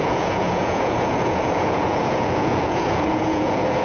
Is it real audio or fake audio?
fake